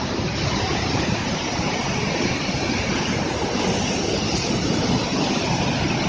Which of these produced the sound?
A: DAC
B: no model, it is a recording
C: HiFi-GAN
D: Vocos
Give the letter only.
B